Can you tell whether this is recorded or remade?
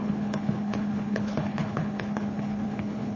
remade